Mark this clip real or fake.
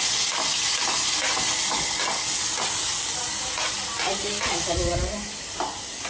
real